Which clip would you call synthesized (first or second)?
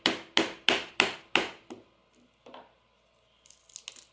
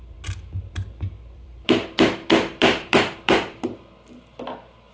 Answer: second